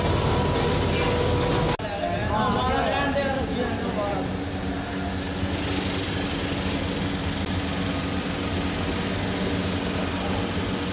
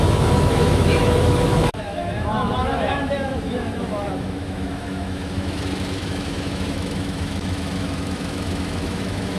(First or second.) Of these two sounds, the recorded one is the first